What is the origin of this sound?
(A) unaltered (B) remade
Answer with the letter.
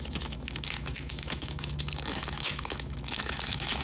B